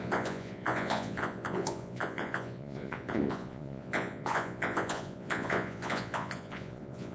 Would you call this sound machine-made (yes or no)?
yes